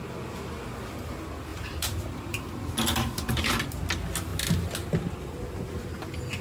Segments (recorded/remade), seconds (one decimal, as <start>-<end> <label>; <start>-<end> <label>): 0.0-1.5 recorded; 1.5-3.3 remade; 3.3-6.4 recorded